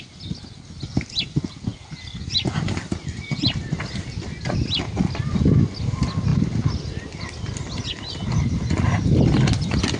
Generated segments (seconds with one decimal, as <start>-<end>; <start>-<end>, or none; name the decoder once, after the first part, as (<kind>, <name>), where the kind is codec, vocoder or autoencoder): none